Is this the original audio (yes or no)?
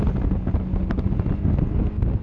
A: yes